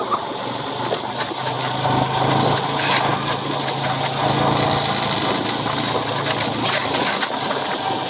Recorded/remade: recorded